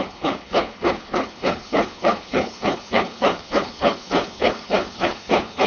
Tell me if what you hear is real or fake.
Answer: fake